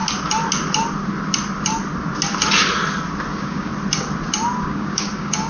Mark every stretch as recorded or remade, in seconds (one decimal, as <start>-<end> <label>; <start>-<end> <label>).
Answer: 0.0-3.3 recorded; 3.3-3.7 remade; 3.7-4.6 recorded; 4.6-5.5 remade